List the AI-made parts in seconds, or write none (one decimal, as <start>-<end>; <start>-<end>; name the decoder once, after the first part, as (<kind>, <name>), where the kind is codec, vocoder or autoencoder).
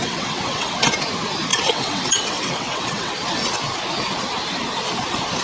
0.0-0.9 (vocoder, WaveNeXt); 1.5-3.1